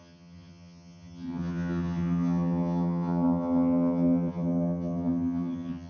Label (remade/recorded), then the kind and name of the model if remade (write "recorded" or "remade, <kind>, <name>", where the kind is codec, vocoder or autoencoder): remade, vocoder, HiFi-GAN